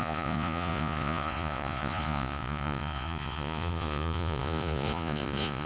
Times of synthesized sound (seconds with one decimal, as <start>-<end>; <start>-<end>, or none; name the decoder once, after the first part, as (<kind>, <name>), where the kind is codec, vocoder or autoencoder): 0.0-5.7 (vocoder, Vocos)